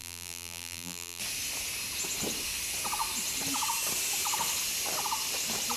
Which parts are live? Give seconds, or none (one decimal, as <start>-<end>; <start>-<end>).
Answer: 1.2-5.8